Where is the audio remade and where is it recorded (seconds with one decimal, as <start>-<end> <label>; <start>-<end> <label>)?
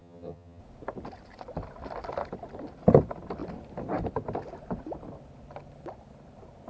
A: 0.0-0.6 remade; 0.6-6.7 recorded